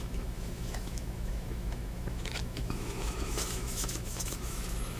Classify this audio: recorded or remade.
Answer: remade